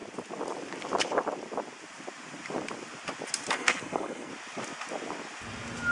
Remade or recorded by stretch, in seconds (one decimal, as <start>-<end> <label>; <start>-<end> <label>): 0.0-3.5 recorded; 3.5-4.3 remade; 4.3-5.9 recorded